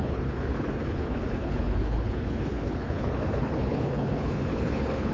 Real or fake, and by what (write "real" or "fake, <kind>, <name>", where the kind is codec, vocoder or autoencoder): fake, codec, HILCodec